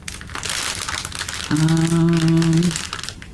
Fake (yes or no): no